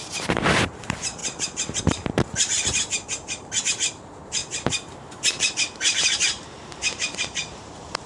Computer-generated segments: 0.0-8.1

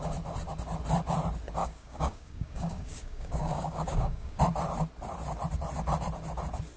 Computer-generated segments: 1.6-4.4

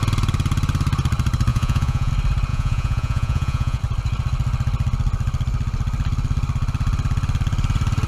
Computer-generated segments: 1.5-2.1; 2.5-3.8

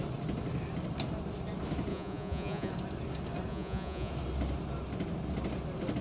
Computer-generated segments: 1.9-2.7; 3.5-4.1

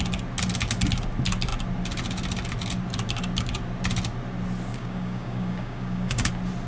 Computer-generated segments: 4.7-6.3

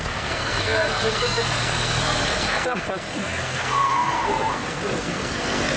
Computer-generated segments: 0.0-5.8

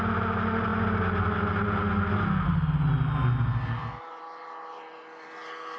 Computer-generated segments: none

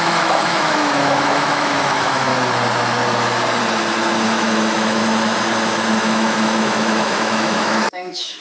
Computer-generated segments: 0.0-2.3; 4.3-5.0; 6.0-8.4